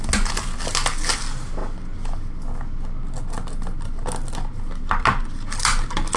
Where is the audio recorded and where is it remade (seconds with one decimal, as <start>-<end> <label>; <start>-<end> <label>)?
0.0-6.2 recorded